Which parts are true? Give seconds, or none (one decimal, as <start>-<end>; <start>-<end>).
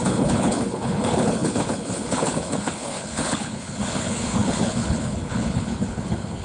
none